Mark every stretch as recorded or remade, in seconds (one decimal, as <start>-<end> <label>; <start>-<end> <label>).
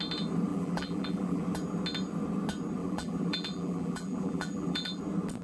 0.0-0.5 recorded; 0.5-1.4 remade; 1.4-2.8 recorded; 2.8-5.0 remade; 5.0-5.4 recorded